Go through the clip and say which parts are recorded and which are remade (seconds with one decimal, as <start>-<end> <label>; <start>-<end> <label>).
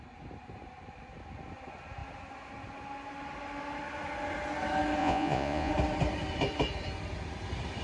0.0-5.0 recorded; 5.0-5.7 remade; 5.7-7.8 recorded